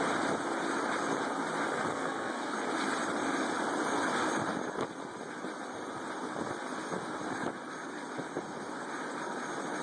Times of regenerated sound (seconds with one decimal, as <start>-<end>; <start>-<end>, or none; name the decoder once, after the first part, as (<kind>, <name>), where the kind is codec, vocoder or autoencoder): 1.9-2.5 (codec, SNAC)